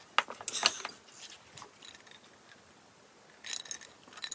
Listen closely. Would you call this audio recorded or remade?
recorded